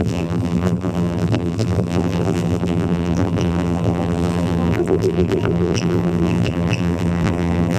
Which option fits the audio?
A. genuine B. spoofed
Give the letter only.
B